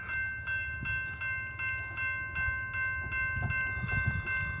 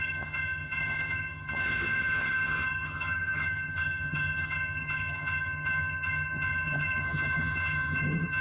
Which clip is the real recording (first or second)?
first